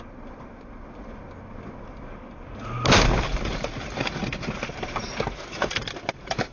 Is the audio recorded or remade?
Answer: recorded